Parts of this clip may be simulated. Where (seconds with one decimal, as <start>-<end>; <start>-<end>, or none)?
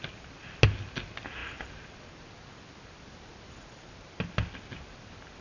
none